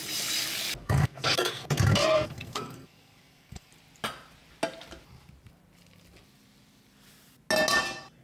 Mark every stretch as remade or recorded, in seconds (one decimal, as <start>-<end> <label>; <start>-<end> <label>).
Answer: 0.0-0.8 recorded; 0.8-3.7 remade; 3.7-8.2 recorded